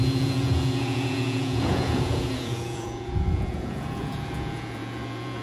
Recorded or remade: remade